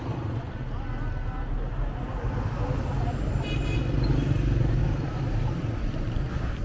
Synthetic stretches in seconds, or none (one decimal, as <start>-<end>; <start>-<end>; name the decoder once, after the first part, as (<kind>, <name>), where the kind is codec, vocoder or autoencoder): none